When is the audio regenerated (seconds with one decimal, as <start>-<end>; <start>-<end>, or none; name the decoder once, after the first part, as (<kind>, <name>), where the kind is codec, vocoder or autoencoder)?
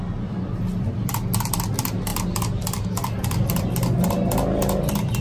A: none